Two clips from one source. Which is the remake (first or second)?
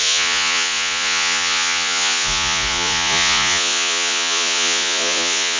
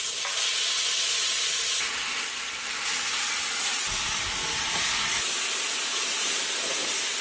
first